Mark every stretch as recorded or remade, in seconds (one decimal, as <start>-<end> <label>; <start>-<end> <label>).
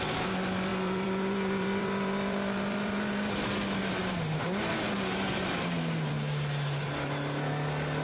0.0-0.7 recorded; 0.7-3.3 remade; 3.3-4.0 recorded; 4.0-6.1 remade; 6.1-8.0 recorded